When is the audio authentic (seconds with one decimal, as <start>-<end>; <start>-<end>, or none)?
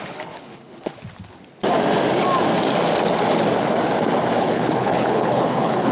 0.9-4.4